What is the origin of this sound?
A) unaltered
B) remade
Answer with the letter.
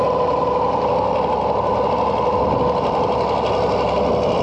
A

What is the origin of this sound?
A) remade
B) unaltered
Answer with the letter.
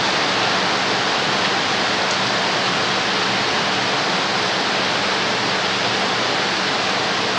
B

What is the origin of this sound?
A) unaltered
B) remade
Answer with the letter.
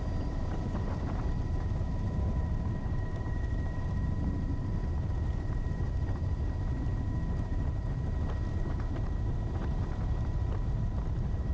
B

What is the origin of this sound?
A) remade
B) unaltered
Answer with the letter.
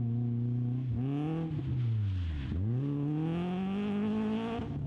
B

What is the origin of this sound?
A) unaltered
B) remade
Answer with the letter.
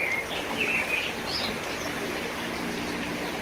A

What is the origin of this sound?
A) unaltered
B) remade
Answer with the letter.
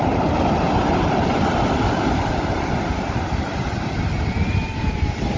B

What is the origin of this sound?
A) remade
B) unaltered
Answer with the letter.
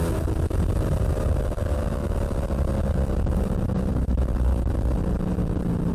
B